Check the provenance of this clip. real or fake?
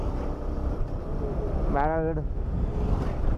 real